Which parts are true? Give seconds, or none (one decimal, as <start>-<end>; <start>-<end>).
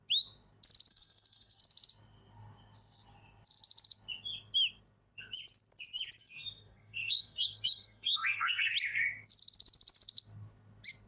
0.0-0.9; 1.6-6.2; 8.7-11.1